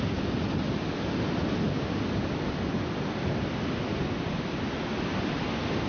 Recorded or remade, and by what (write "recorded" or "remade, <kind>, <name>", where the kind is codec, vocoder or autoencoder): recorded